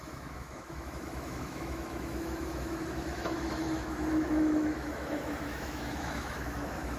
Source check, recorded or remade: remade